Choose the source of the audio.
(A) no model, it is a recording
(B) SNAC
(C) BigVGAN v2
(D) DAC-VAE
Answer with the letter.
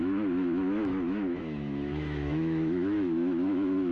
D